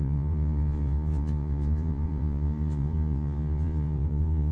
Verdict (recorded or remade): remade